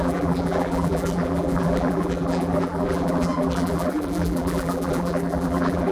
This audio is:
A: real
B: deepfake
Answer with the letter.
B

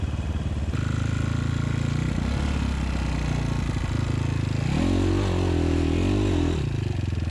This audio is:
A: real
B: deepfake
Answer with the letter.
A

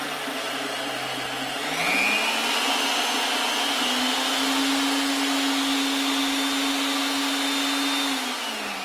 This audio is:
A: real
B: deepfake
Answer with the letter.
A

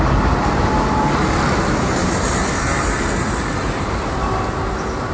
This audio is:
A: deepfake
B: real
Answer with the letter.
A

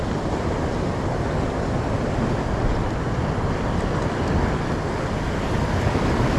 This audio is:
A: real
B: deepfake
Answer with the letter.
A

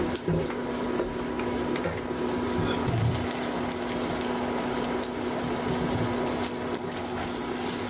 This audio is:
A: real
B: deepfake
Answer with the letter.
A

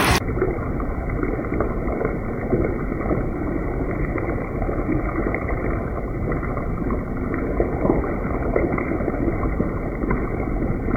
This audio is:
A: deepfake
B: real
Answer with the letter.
A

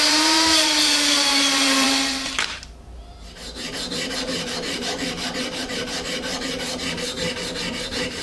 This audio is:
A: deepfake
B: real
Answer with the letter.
A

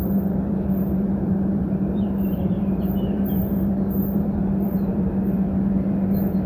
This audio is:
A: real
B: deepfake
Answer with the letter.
B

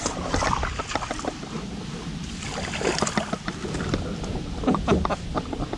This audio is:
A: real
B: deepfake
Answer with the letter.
A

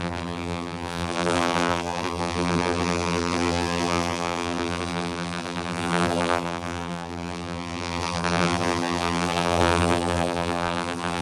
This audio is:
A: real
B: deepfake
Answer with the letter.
B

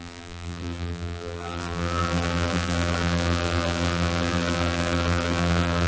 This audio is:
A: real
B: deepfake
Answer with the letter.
B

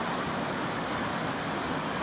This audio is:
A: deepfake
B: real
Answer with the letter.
B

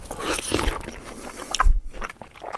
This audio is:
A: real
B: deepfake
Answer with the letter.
A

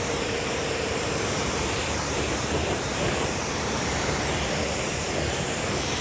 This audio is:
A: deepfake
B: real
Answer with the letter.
A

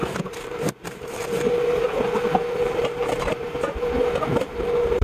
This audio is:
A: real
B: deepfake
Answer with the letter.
B